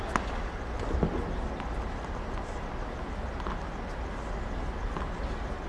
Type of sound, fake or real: real